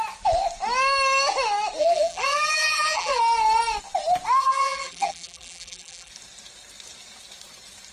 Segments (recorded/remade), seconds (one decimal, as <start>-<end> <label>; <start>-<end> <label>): 0.0-1.8 recorded; 1.8-3.2 remade; 3.2-4.4 recorded; 4.4-6.1 remade; 6.1-7.9 recorded